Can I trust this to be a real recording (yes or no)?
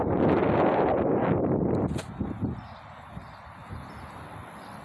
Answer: yes